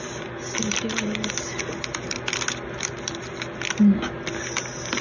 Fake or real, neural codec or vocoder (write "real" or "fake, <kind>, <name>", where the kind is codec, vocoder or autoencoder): real